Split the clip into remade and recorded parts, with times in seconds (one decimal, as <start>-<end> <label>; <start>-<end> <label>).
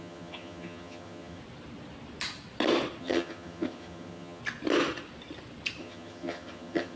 0.0-1.4 remade; 1.4-3.0 recorded; 3.0-4.4 remade; 4.4-5.8 recorded; 5.8-7.0 remade